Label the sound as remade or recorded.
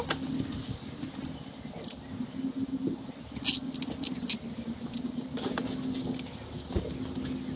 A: recorded